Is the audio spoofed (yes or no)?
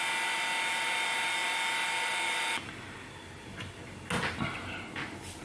no